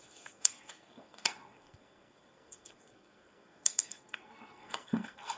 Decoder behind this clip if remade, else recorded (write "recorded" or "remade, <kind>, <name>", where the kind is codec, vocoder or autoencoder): remade, codec, SNAC